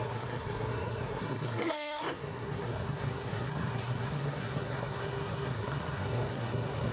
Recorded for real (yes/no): no